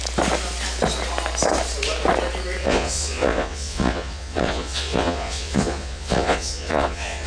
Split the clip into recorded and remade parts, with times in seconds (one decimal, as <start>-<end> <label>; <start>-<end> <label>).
0.0-2.6 recorded; 2.6-7.3 remade